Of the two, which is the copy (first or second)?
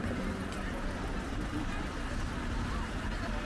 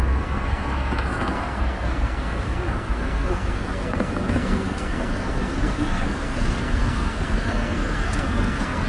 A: second